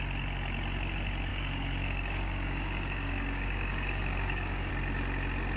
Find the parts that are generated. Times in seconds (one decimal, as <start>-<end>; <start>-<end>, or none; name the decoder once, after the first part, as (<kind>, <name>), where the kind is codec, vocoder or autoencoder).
1.3-4.7 (codec, DAC)